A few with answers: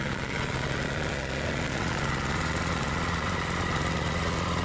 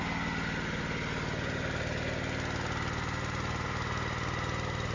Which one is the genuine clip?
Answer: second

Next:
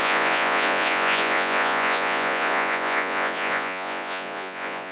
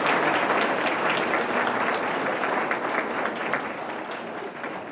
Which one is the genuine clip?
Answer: second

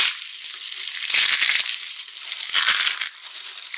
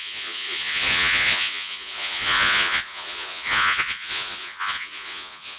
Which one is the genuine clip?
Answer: first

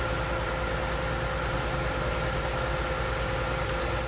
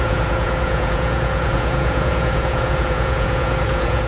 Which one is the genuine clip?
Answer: first